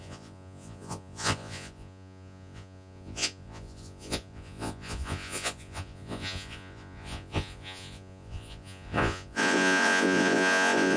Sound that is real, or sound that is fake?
fake